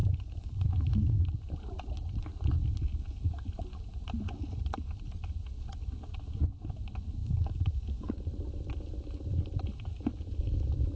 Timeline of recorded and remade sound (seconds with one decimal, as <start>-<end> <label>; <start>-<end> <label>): 0.0-1.2 remade; 1.2-7.2 recorded; 7.2-8.1 remade; 8.1-11.0 recorded